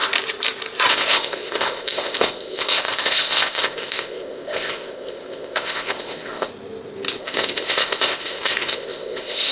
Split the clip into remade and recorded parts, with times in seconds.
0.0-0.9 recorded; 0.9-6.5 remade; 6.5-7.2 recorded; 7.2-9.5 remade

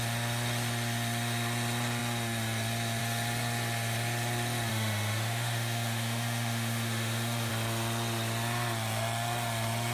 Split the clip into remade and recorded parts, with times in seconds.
0.0-4.7 recorded; 4.7-7.5 remade; 7.5-9.9 recorded

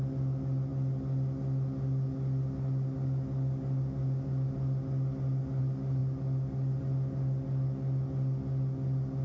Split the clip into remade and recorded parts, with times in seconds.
0.0-9.2 recorded

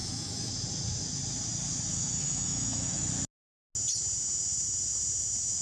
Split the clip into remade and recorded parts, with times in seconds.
0.0-0.5 remade; 0.5-1.9 recorded; 1.9-3.1 remade; 3.1-5.6 recorded

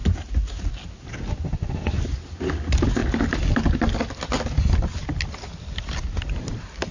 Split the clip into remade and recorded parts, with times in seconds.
0.0-6.9 recorded

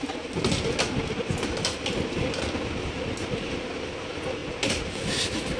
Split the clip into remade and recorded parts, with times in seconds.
0.0-5.6 recorded